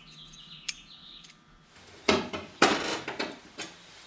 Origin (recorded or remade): recorded